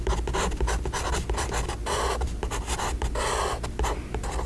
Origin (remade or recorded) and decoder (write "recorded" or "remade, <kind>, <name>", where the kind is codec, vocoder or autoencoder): recorded